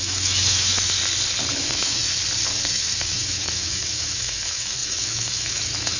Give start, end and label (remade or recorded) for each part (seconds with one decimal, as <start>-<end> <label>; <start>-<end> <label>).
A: 0.0-1.0 remade; 1.0-1.6 recorded; 1.6-2.1 remade; 2.1-2.7 recorded; 2.7-6.0 remade

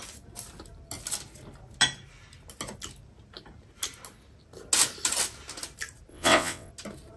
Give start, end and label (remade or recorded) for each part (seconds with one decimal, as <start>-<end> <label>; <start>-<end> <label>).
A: 0.0-6.1 recorded; 6.1-6.7 remade; 6.7-7.2 recorded

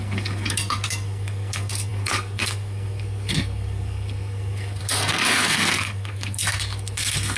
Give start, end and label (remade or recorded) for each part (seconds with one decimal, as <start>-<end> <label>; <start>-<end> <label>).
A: 0.0-7.4 remade

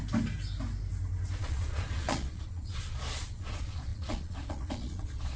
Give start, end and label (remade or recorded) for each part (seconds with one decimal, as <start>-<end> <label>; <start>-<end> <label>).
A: 0.0-1.4 recorded; 1.4-5.4 remade

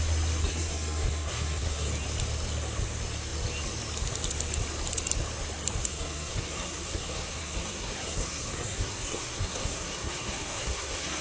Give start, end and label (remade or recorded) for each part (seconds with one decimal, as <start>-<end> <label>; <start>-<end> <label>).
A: 0.0-0.4 recorded; 0.4-1.9 remade; 1.9-5.8 recorded; 5.8-11.2 remade

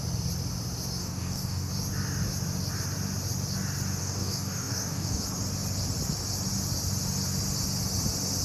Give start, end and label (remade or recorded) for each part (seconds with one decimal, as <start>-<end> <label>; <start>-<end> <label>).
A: 0.0-1.0 recorded; 1.0-1.7 remade; 1.7-4.0 recorded; 4.0-5.2 remade; 5.2-8.4 recorded

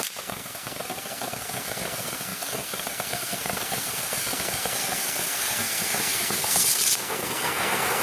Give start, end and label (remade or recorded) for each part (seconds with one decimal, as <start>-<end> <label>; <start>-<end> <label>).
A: 0.0-8.0 remade